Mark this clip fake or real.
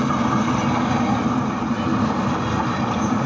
fake